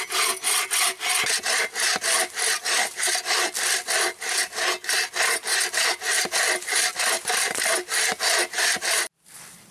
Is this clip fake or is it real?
real